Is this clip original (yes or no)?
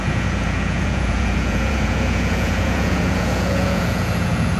no